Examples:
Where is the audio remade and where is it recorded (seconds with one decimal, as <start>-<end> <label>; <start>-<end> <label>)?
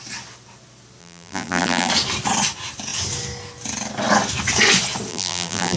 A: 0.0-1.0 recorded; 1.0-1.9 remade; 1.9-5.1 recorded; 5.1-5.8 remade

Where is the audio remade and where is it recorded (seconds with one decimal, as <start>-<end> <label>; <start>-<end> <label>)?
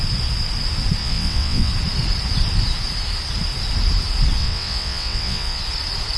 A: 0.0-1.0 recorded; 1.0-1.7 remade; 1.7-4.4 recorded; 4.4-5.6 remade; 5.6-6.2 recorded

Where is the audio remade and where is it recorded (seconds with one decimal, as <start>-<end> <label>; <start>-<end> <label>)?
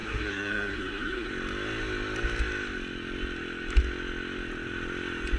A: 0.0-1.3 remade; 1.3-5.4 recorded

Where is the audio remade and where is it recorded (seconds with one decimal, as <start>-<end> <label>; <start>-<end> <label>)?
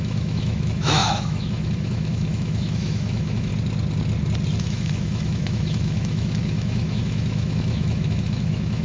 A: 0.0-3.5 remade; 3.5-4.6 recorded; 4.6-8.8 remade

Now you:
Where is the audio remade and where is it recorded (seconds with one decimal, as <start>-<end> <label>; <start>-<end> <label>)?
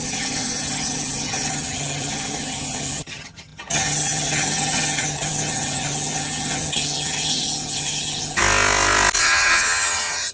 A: 0.0-8.4 remade; 8.4-9.2 recorded; 9.2-10.3 remade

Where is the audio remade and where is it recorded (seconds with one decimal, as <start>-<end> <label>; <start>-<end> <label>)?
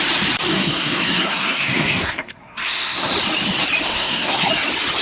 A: 0.0-0.5 recorded; 0.5-3.1 remade; 3.1-3.9 recorded; 3.9-4.5 remade; 4.5-5.0 recorded